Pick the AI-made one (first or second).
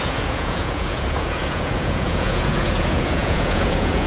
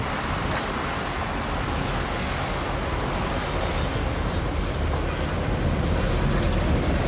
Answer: first